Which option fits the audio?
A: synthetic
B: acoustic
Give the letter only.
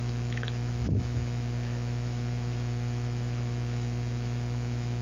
A